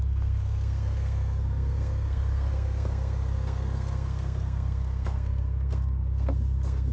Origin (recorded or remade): remade